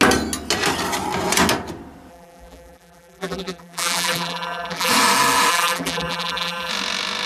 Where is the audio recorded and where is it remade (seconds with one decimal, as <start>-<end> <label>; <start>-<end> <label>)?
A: 0.0-2.1 recorded; 2.1-4.9 remade; 4.9-5.5 recorded; 5.5-6.7 remade; 6.7-7.3 recorded